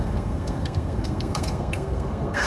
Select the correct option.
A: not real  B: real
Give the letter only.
A